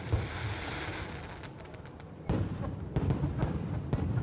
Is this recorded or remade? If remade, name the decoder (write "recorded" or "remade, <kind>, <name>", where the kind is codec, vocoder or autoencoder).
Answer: recorded